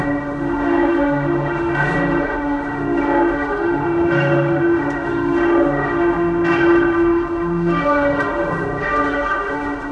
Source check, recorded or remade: remade